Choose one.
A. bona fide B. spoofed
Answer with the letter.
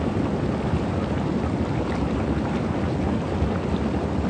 A